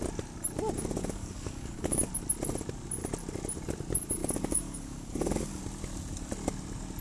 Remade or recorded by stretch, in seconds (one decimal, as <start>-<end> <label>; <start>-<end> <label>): 0.0-1.0 recorded; 1.0-2.1 remade; 2.1-4.2 recorded; 4.2-5.6 remade; 5.6-7.0 recorded